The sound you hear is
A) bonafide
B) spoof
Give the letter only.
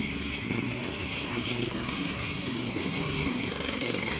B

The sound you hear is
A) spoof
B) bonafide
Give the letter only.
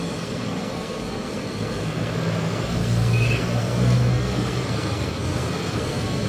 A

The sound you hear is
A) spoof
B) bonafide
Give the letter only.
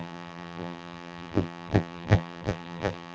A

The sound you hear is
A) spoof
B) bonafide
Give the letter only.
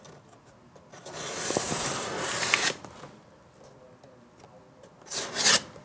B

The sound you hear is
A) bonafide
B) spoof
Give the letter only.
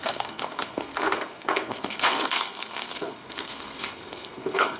B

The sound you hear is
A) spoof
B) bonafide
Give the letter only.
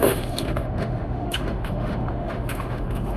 A